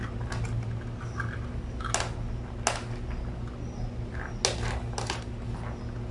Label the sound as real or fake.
real